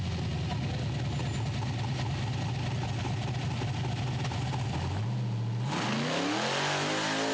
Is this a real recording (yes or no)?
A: yes